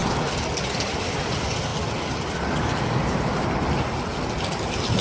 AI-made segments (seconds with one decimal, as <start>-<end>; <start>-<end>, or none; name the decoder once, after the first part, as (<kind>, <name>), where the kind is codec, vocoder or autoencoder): none